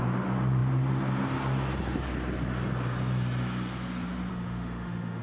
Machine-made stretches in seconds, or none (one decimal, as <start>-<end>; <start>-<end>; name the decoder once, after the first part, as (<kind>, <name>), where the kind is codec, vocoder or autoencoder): 4.3-5.2 (autoencoder, DAC-VAE)